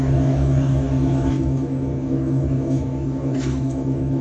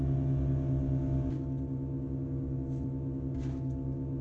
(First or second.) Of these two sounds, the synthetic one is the first